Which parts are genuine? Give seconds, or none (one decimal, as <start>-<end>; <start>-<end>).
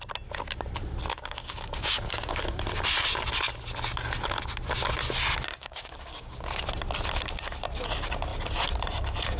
0.0-1.1; 2.4-5.5; 6.6-9.4